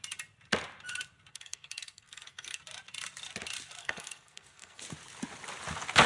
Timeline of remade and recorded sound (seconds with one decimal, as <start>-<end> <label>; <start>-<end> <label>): 0.0-1.3 recorded; 1.3-2.6 remade; 2.6-3.8 recorded; 3.8-4.8 remade; 4.8-6.1 recorded